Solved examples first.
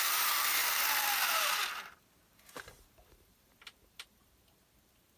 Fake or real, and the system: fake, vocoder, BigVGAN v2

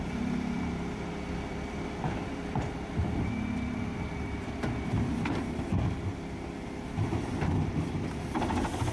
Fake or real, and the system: fake, vocoder, BigVGAN v2